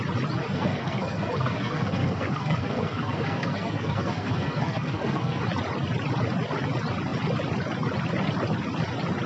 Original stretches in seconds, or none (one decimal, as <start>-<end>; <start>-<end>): 0.0-0.4; 5.4-9.3